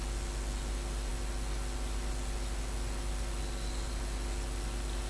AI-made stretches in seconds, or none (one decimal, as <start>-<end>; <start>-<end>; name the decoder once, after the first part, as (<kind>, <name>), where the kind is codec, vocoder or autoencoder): none